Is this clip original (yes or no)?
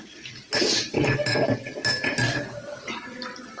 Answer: yes